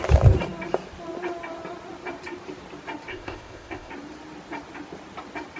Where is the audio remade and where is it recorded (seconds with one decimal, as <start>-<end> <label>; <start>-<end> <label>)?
0.0-3.1 recorded; 3.1-3.9 remade; 3.9-5.6 recorded